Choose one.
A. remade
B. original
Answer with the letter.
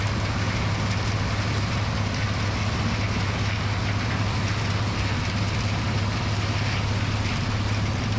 B